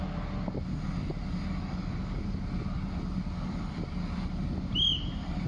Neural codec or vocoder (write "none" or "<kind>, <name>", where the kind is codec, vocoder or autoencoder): none